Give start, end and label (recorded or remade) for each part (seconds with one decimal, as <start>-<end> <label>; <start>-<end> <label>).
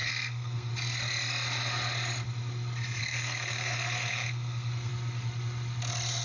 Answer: 0.0-0.7 remade; 0.7-3.0 recorded; 3.0-4.9 remade; 4.9-6.2 recorded